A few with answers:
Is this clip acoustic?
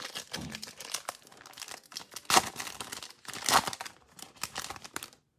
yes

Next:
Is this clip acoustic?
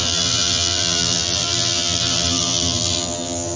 no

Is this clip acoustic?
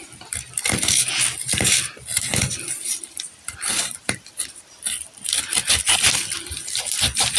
no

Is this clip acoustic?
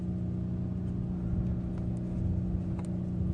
yes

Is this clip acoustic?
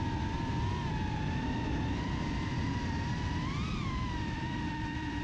no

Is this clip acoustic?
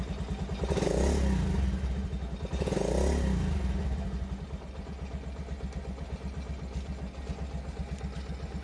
yes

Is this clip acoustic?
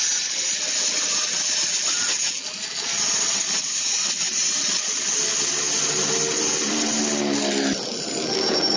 yes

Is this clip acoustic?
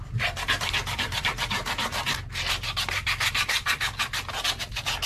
no